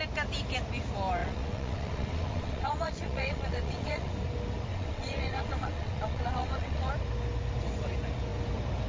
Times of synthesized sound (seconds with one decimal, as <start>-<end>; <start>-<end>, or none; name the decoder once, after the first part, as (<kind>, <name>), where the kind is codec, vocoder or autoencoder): 1.2-4.1 (vocoder, WaveNeXt); 4.7-6.9